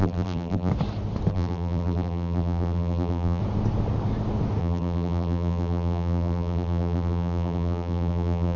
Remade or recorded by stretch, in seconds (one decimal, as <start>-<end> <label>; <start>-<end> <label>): 0.0-0.7 remade; 0.7-1.3 recorded; 1.3-3.4 remade; 3.4-4.6 recorded; 4.6-8.6 remade